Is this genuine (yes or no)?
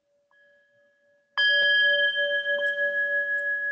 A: yes